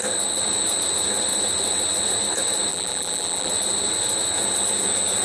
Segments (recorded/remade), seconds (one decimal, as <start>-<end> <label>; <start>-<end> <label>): 0.0-2.7 recorded; 2.7-3.5 remade; 3.5-5.2 recorded